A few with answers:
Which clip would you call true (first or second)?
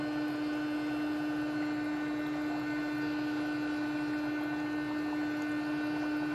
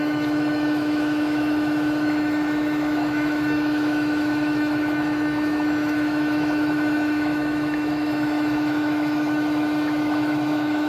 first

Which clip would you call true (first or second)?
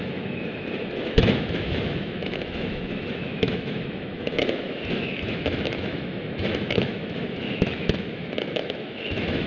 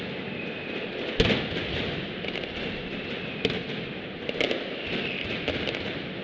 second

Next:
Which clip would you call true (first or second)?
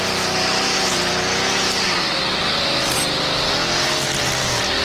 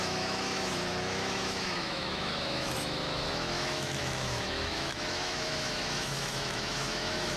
first